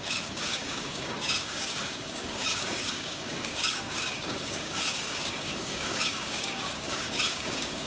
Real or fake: fake